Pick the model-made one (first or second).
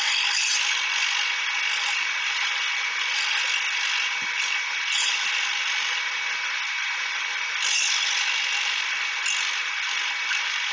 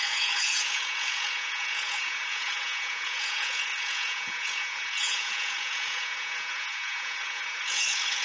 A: second